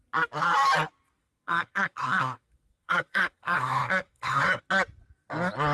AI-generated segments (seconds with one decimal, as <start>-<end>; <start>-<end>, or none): 1.2-4.6